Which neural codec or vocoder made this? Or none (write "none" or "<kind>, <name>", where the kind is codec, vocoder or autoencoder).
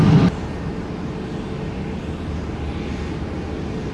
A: none